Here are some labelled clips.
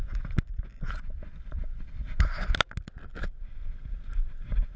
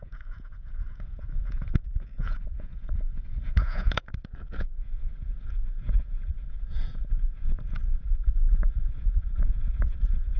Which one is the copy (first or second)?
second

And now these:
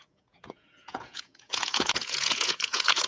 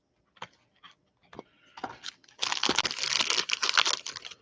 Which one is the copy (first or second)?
first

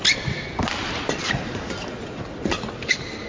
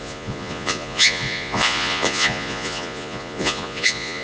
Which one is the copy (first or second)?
second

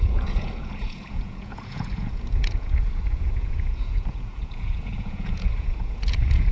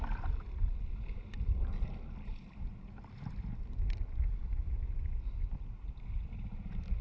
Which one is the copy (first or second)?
first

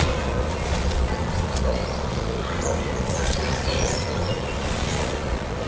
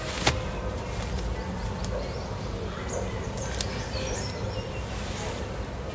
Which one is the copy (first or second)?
first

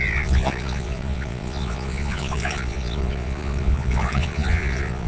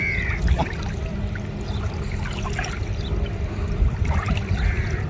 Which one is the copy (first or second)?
first